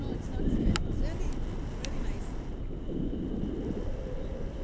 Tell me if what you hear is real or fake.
real